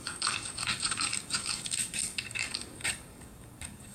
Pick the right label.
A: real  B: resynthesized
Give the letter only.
B